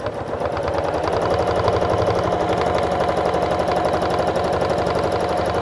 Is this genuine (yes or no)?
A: yes